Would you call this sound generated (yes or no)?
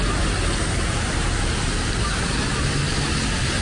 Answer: no